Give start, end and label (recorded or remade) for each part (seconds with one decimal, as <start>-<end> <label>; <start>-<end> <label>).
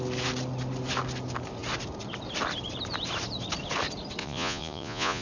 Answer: 0.0-4.2 recorded; 4.2-5.2 remade